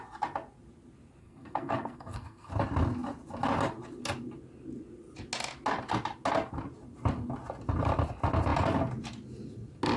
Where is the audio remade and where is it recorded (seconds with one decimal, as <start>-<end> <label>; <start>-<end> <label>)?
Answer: 0.0-1.2 recorded; 1.2-2.5 remade; 2.5-10.0 recorded